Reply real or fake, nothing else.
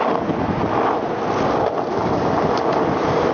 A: real